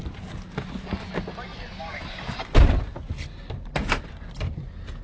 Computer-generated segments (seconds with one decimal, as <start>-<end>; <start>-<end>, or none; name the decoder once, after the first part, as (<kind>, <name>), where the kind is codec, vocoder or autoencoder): none